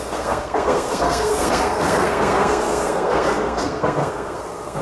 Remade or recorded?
remade